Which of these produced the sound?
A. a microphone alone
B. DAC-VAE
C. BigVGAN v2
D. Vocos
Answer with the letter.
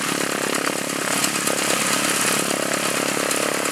A